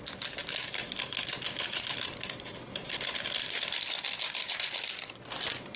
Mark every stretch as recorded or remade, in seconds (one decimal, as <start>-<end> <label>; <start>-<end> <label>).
0.0-5.8 recorded